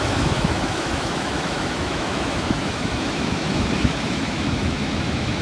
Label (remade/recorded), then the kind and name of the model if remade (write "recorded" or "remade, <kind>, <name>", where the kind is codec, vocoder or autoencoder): remade, autoencoder, DAC-VAE